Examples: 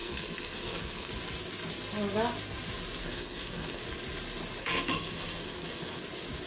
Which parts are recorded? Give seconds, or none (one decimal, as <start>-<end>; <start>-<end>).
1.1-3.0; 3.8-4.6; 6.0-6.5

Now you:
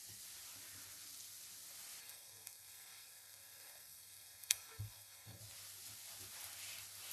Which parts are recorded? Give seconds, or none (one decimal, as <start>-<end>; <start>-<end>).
0.0-2.0; 5.4-7.1

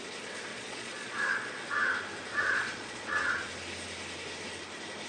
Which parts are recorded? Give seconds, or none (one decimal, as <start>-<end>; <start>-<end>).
0.0-0.5; 1.7-2.3; 3.5-5.1

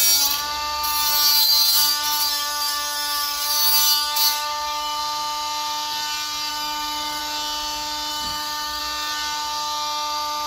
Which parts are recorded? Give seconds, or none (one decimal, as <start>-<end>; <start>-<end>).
0.0-1.3; 5.0-6.5; 7.2-8.1; 8.8-10.5